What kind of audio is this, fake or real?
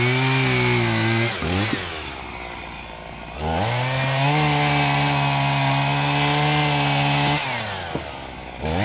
real